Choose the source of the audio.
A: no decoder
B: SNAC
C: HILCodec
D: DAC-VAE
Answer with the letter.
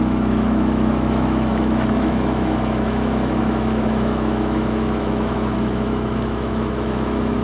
D